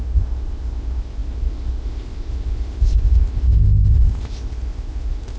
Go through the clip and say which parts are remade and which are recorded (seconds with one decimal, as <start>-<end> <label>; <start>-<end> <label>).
0.0-5.4 remade